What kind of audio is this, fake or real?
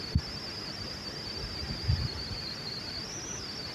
real